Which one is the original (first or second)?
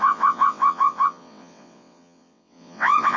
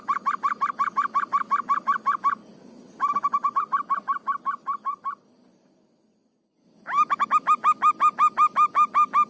second